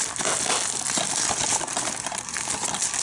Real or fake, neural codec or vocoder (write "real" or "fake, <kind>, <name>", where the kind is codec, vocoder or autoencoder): real